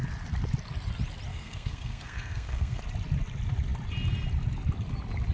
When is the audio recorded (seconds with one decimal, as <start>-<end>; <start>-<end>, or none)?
0.0-1.3; 2.8-5.3